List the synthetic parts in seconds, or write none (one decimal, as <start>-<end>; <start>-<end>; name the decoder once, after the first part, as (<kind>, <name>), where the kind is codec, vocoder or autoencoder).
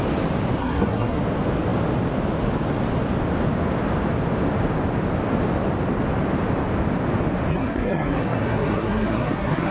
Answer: 0.6-1.2 (codec, SNAC); 7.5-9.7